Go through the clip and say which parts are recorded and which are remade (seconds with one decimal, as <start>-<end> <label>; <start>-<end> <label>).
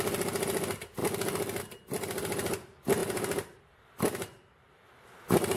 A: 0.0-5.6 recorded